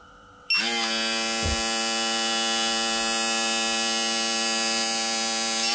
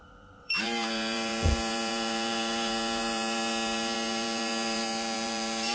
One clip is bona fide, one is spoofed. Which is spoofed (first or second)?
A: second